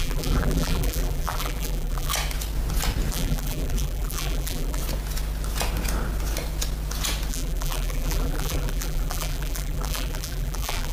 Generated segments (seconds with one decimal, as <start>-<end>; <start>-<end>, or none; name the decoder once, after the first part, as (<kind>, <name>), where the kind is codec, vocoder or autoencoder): 0.0-2.1 (vocoder, BigVGAN v2); 3.1-4.8; 7.3-10.9